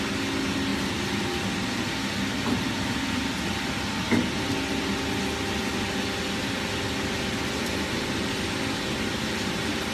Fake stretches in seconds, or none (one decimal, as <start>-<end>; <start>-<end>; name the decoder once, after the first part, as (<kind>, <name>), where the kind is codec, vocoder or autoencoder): none